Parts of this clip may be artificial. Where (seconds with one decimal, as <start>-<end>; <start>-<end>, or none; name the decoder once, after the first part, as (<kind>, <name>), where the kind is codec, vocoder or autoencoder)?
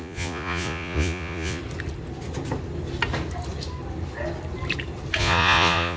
0.0-1.6 (vocoder, Vocos); 5.2-6.0